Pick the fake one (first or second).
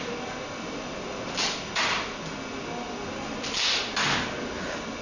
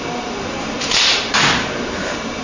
second